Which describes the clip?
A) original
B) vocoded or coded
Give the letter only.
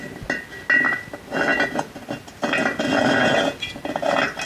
A